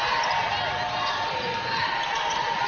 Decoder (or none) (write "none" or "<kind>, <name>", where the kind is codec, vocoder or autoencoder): none